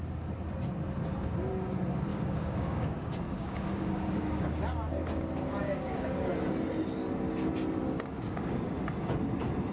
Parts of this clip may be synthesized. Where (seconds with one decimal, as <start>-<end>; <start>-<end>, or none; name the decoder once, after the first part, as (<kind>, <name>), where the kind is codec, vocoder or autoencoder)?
2.1-4.4 (codec, DAC); 5.6-6.3; 8.1-8.7